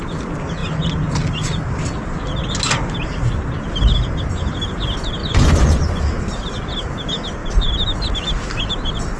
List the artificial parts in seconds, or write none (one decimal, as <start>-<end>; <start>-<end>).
5.2-6.0